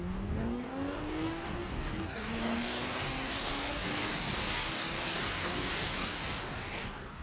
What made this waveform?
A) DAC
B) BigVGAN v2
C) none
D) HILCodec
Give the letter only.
A